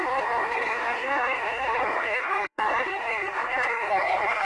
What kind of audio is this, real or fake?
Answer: fake